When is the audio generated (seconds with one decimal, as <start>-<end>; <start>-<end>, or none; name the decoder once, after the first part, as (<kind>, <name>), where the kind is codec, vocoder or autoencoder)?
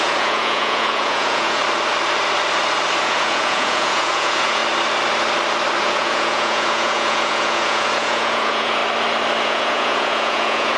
0.0-1.6 (vocoder, Vocos); 3.0-4.6; 5.8-8.8; 9.4-10.8